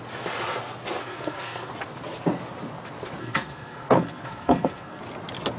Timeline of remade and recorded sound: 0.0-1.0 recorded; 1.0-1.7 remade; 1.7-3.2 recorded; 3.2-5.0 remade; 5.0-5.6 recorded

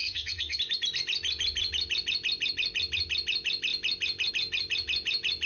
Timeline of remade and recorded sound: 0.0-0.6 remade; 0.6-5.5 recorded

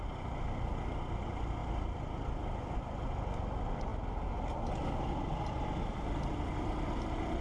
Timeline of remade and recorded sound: 0.0-7.4 recorded